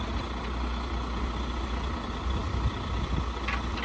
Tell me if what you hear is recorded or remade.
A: recorded